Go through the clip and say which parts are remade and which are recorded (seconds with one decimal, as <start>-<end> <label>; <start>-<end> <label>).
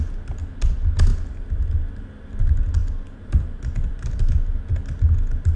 0.0-5.6 recorded